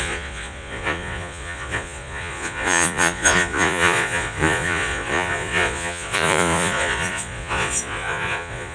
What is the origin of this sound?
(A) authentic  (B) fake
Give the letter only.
B